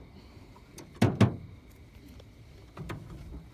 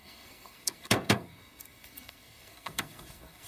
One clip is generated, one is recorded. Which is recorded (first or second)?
first